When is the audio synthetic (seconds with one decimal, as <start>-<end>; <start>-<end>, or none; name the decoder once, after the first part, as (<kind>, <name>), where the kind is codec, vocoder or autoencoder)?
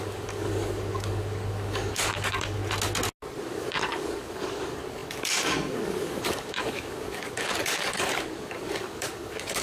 0.0-2.6 (codec, DAC); 3.4-9.6